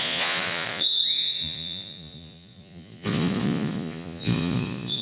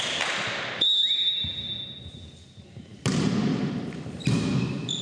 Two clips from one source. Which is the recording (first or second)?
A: second